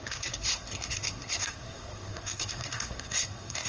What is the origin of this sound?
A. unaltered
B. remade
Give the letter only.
B